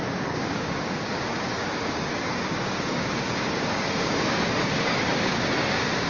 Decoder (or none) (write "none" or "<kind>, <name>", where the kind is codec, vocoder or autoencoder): codec, DAC